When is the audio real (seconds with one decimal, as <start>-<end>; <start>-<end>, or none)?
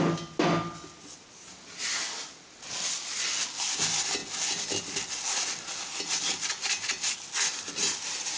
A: 0.0-8.4